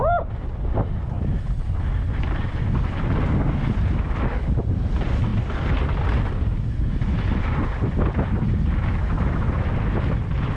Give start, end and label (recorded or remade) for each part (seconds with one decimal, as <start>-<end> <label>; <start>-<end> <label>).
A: 0.0-10.6 recorded